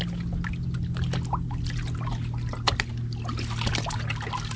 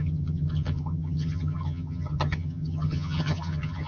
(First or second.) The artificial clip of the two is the second